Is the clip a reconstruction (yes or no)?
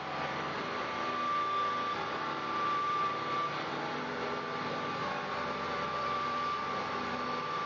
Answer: yes